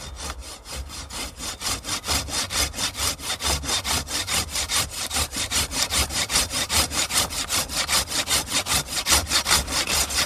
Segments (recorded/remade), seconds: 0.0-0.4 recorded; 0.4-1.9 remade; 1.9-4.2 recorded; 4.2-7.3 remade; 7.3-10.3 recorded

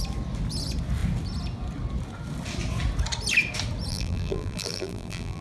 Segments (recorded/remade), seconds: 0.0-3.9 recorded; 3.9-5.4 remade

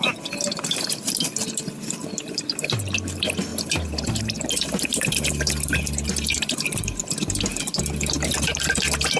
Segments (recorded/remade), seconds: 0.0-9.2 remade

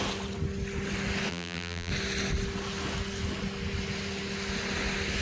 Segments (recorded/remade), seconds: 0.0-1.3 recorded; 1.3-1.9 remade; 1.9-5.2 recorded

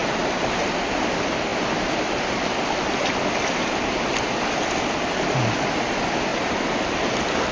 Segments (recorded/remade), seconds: 0.0-0.7 remade; 0.7-6.3 recorded; 6.3-6.9 remade; 6.9-7.5 recorded

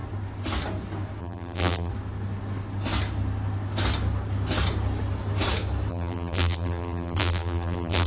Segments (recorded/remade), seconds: 0.0-1.2 recorded; 1.2-1.9 remade; 1.9-5.9 recorded; 5.9-8.1 remade